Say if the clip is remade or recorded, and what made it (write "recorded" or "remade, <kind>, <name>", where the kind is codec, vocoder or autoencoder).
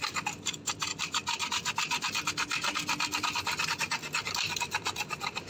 recorded